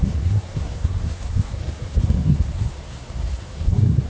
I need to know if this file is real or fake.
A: fake